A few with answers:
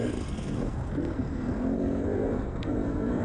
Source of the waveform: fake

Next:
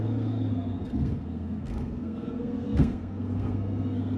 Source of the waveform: fake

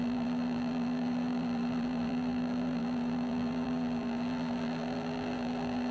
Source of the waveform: fake